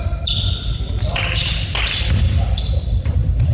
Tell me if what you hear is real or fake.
real